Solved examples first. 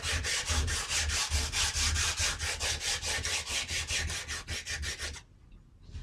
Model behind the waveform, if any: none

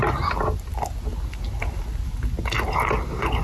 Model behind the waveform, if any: none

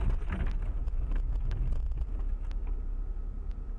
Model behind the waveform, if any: none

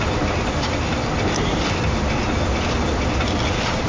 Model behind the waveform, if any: none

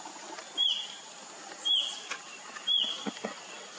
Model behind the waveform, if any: none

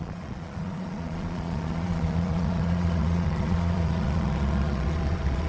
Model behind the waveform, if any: vocoder, Vocos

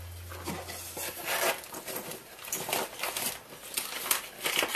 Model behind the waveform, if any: none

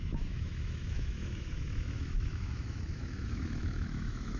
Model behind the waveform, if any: autoencoder, DAC-VAE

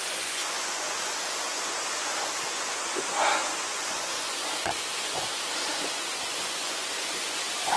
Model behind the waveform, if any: vocoder, Vocos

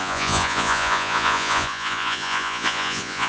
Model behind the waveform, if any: vocoder, Vocos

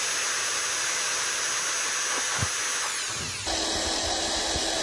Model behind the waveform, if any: none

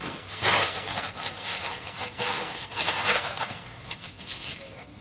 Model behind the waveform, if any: codec, SNAC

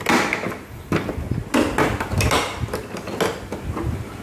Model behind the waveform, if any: none